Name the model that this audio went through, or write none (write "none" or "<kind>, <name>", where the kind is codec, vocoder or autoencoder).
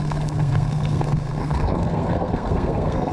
codec, SNAC